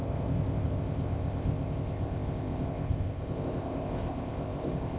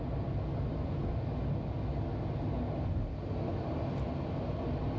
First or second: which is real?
second